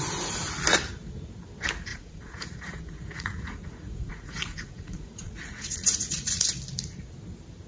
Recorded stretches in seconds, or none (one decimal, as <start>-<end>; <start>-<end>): 0.0-1.9; 6.5-7.7